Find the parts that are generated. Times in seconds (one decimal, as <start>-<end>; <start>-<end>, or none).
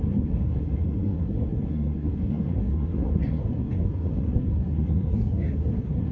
0.0-6.1